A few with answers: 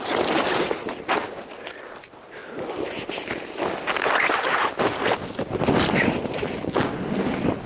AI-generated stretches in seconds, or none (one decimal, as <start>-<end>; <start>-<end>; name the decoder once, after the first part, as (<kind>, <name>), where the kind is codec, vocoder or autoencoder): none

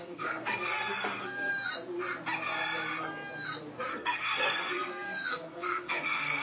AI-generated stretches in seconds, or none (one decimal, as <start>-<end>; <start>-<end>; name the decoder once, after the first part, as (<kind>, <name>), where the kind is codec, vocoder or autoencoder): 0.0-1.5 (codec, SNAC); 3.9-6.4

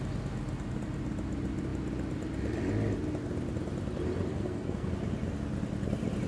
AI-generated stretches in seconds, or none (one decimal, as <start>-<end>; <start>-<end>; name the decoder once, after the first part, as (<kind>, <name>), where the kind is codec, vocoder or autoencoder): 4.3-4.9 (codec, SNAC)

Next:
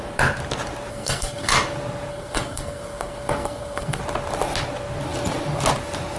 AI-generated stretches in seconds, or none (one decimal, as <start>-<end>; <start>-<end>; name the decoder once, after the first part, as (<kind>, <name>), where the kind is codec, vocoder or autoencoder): 0.9-1.5 (codec, SNAC); 2.1-4.0

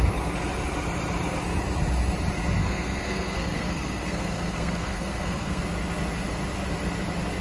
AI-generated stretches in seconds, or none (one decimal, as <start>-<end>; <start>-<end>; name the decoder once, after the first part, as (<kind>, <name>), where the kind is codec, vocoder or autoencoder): 2.6-5.6 (codec, SNAC)

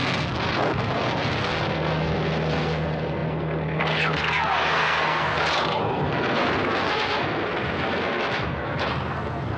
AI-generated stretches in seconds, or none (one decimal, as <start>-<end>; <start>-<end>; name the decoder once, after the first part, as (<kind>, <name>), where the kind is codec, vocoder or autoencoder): 0.0-9.6 (codec, SNAC)

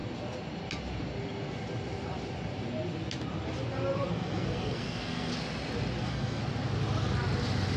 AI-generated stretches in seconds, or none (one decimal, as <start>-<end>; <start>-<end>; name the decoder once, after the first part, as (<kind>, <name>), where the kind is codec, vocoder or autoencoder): 4.1-5.3 (codec, SNAC); 6.0-6.4

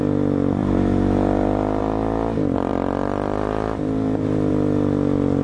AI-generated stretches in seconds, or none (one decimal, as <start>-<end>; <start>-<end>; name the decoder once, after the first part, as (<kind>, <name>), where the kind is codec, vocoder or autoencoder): none